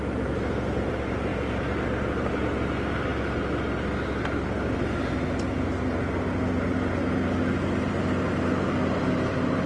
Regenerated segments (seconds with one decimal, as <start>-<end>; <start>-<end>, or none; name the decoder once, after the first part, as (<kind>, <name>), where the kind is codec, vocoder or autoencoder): none